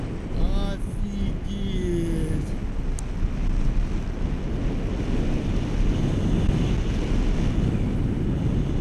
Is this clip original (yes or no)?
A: yes